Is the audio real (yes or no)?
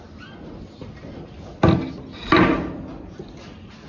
yes